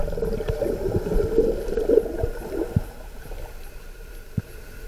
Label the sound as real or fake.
real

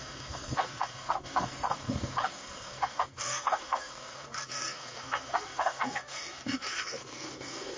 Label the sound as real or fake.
fake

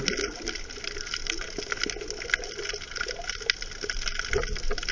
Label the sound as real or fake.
real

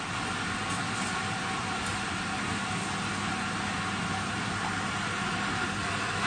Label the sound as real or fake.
real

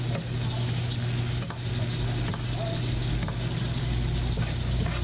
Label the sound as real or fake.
real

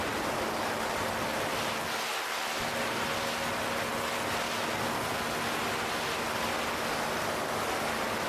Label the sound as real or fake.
real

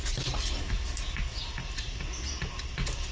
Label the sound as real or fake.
real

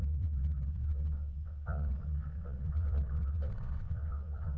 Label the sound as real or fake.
fake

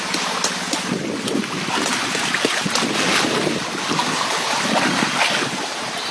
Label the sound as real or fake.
real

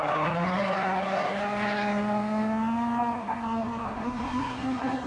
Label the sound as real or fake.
fake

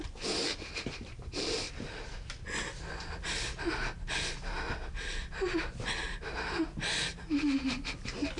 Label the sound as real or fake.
real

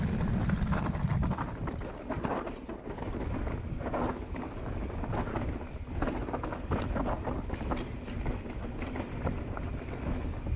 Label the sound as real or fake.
real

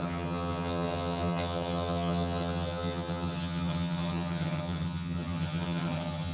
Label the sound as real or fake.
fake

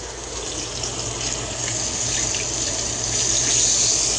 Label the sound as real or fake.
real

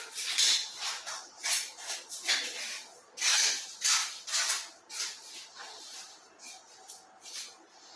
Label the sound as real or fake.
real